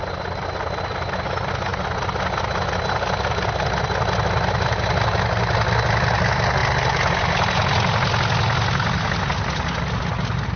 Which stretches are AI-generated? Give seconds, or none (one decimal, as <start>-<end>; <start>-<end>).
none